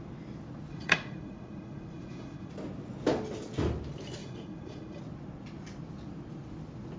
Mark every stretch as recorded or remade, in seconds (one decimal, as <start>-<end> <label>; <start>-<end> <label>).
0.0-0.7 recorded; 0.7-2.5 remade; 2.5-4.2 recorded; 4.2-5.0 remade; 5.0-7.0 recorded